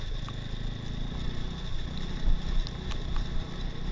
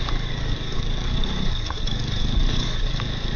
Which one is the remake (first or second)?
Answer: second